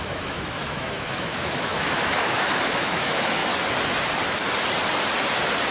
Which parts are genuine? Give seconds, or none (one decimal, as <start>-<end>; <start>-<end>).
3.4-5.7